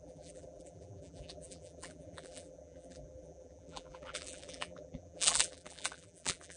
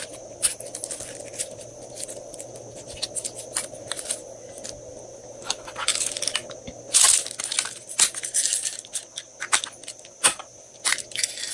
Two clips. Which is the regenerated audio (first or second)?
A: first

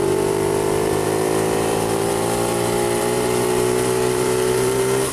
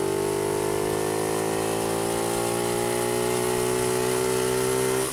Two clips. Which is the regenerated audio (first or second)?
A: first